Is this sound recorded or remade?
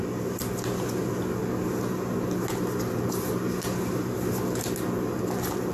recorded